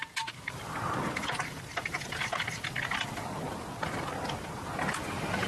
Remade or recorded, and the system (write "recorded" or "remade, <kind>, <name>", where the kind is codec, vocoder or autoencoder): recorded